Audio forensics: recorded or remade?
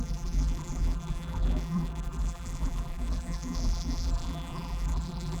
remade